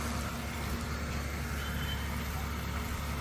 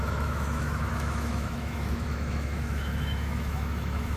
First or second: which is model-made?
second